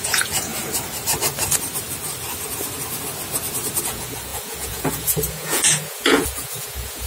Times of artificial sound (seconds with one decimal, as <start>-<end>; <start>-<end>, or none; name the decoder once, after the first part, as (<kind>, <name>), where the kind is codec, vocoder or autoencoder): 0.0-0.5 (vocoder, Vocos); 3.8-7.1